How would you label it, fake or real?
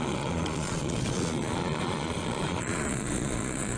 fake